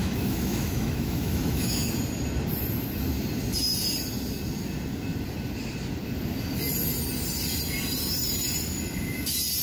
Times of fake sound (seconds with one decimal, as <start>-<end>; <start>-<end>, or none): 0.0-1.9